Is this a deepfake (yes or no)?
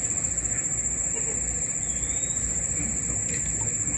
no